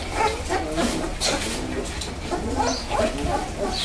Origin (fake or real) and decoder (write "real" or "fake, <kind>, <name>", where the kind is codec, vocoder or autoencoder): real